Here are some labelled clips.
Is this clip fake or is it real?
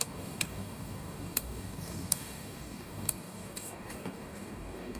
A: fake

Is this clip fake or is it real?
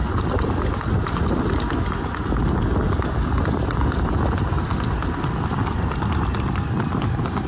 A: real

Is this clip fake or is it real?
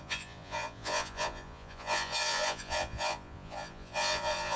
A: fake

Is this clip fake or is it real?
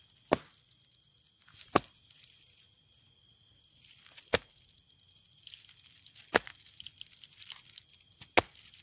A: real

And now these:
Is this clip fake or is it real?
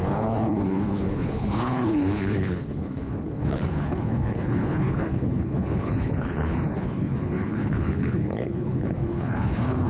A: fake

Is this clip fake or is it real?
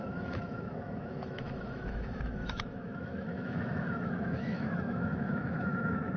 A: fake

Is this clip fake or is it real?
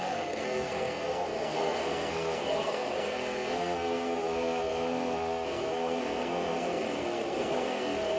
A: fake